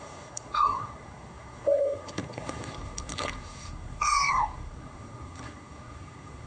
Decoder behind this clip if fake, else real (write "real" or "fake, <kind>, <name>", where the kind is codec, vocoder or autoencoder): fake, codec, SNAC